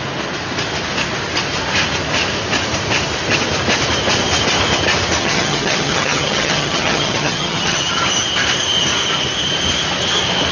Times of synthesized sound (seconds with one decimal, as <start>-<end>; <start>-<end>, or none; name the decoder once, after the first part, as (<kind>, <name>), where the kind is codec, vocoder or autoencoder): 5.2-8.0 (vocoder, HiFi-GAN)